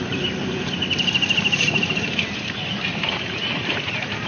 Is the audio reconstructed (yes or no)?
yes